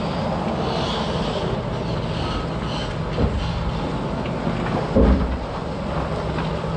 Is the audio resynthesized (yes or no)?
no